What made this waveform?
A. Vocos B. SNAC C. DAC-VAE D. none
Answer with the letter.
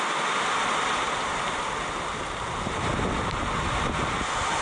D